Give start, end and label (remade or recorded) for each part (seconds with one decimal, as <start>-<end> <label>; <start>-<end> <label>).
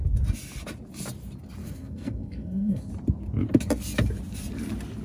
0.0-1.6 recorded; 1.6-2.9 remade; 2.9-5.0 recorded